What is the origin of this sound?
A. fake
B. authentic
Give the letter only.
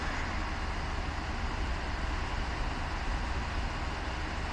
B